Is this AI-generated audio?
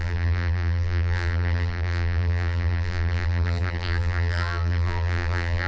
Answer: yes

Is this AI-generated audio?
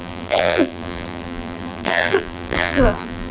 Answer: yes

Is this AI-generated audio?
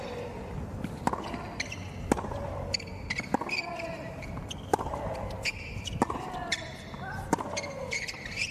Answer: no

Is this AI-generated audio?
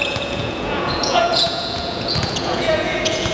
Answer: yes